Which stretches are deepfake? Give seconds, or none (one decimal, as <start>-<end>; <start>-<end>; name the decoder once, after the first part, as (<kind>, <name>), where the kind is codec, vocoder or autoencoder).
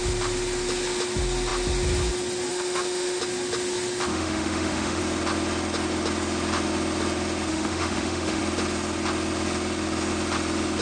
2.5-3.2 (autoencoder, DAC-VAE); 4.1-5.0; 7.5-8.4